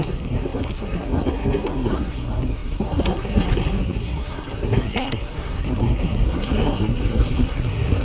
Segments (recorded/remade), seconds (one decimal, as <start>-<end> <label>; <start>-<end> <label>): 0.0-8.0 remade